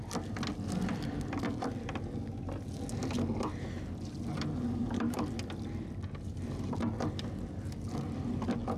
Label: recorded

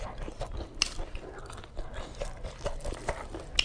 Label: recorded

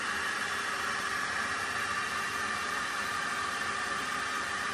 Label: remade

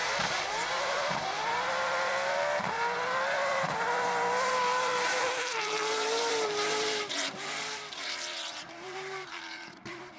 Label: remade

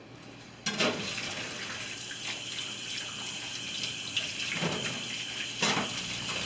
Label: recorded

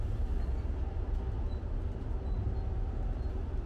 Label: recorded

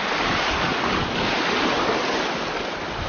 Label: recorded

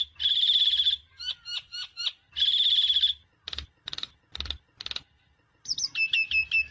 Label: remade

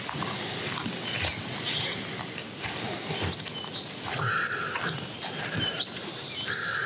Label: recorded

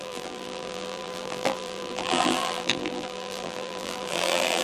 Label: remade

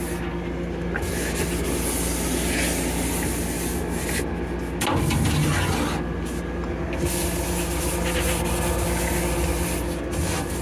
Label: recorded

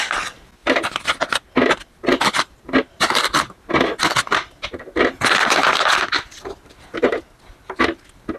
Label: recorded